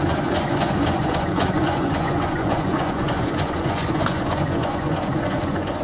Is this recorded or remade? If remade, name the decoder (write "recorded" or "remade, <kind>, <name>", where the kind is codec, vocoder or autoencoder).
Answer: remade, vocoder, Vocos